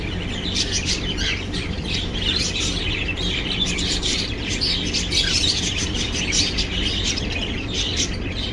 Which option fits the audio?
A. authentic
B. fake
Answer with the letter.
B